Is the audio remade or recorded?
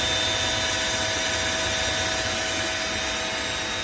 recorded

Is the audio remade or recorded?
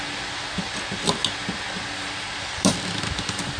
recorded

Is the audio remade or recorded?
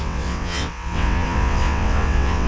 remade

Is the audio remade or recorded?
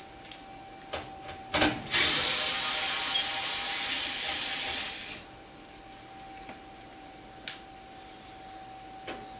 recorded